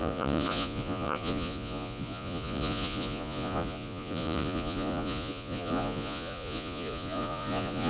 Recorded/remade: remade